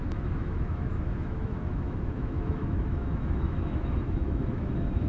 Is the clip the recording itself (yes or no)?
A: no